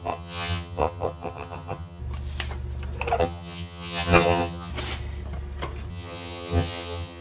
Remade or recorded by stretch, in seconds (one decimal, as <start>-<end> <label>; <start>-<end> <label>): 0.0-2.0 remade; 2.0-3.2 recorded; 3.2-4.7 remade; 4.7-5.9 recorded; 5.9-7.2 remade